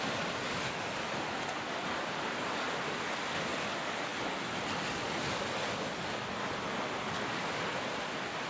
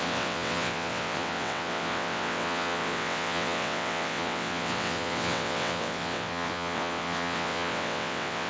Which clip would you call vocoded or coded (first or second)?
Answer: second